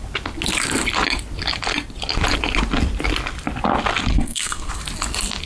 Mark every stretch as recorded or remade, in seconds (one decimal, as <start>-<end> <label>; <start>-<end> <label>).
0.0-4.1 recorded; 4.1-4.7 remade; 4.7-5.5 recorded